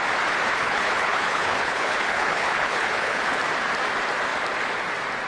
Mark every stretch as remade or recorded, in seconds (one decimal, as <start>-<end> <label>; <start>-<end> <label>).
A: 0.0-0.6 recorded; 0.6-3.4 remade; 3.4-5.3 recorded